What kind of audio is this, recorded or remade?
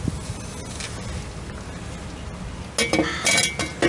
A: recorded